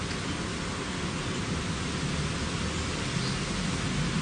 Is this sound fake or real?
real